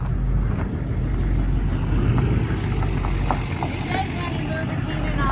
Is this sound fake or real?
real